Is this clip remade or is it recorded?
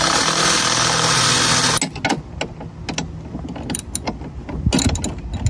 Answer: recorded